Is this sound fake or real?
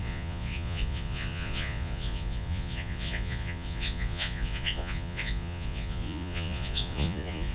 fake